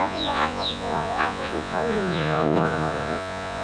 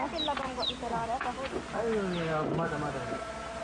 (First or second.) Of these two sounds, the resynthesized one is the first